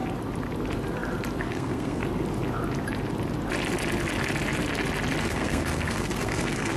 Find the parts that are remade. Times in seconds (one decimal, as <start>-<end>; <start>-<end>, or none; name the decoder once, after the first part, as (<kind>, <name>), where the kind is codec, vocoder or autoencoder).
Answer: 1.4-2.0 (codec, SNAC); 5.2-6.8